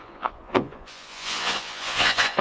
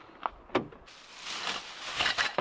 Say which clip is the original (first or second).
second